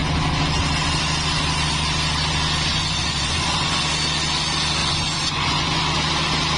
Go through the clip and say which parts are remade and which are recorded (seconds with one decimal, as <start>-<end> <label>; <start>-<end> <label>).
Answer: 0.0-2.7 recorded; 2.7-3.8 remade; 3.8-4.8 recorded; 4.8-5.8 remade; 5.8-6.6 recorded

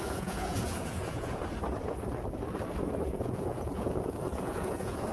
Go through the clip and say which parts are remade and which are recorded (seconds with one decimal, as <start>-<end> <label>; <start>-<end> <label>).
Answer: 0.0-1.4 remade; 1.4-3.1 recorded; 3.1-5.1 remade

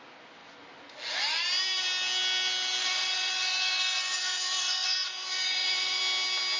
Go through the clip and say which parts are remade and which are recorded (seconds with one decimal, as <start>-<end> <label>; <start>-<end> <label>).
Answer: 0.0-2.8 recorded; 2.8-6.0 remade; 6.0-6.6 recorded

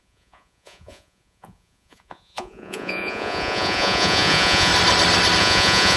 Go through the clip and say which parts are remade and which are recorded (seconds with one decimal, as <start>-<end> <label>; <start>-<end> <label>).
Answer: 0.0-4.7 remade; 4.7-5.4 recorded; 5.4-6.0 remade